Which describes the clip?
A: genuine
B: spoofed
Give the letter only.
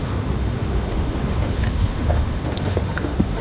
B